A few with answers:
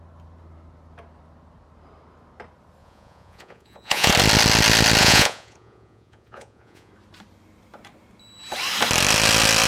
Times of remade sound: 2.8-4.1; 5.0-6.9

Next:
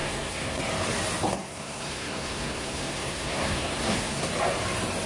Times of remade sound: 0.0-0.6; 1.3-4.3